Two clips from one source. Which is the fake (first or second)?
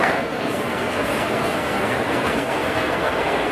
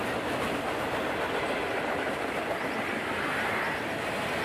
first